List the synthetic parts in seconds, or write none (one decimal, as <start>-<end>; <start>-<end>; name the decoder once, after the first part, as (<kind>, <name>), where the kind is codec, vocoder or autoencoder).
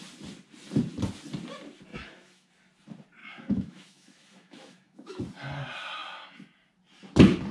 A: 1.9-2.5 (autoencoder, DAC-VAE); 3.2-5.2